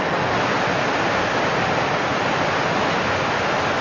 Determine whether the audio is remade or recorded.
recorded